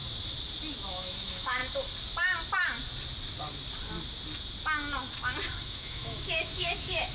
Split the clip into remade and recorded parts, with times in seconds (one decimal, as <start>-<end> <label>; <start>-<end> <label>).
0.0-0.9 recorded; 0.9-1.6 remade; 1.6-5.6 recorded; 5.6-7.1 remade